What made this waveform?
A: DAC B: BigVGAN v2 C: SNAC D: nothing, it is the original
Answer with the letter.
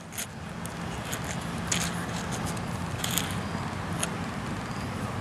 D